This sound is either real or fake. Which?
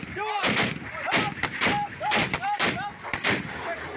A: real